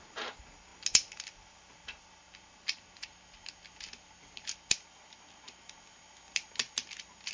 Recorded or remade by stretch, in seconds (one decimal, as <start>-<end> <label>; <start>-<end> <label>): 0.0-7.3 recorded